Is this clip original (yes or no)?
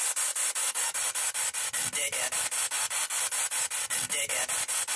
yes